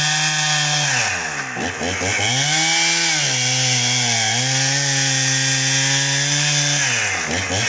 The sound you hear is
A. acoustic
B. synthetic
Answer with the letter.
A